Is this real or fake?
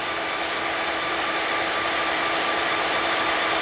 fake